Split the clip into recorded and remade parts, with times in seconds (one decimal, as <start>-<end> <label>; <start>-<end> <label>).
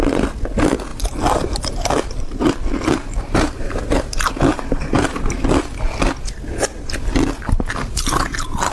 0.0-0.9 recorded; 0.9-5.2 remade; 5.2-8.7 recorded